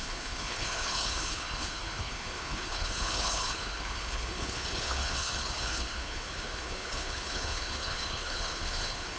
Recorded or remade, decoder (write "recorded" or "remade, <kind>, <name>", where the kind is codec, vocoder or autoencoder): remade, codec, HILCodec